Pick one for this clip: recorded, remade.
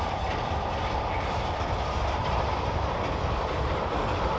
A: recorded